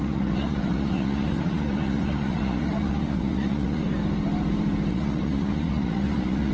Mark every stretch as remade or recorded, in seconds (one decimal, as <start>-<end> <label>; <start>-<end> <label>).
0.0-3.9 remade; 3.9-4.9 recorded; 4.9-6.5 remade